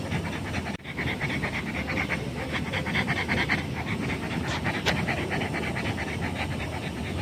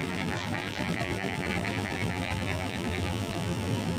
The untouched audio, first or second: first